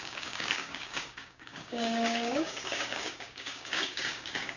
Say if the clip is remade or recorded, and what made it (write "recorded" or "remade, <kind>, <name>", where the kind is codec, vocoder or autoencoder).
remade, codec, DAC